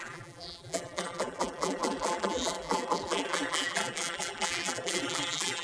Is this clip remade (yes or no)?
yes